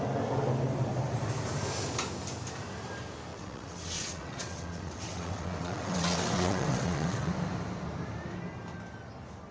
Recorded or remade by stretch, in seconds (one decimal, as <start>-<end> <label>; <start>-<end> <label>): 0.0-3.3 recorded; 3.3-7.3 remade; 7.3-9.5 recorded